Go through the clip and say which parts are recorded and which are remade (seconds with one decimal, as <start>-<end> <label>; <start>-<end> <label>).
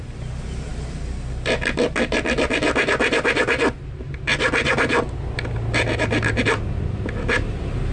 0.0-7.9 recorded